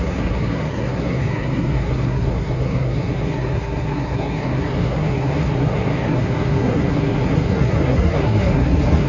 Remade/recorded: remade